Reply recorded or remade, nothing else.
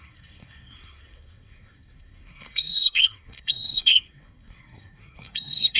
remade